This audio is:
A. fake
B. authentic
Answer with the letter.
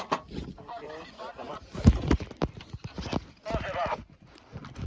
B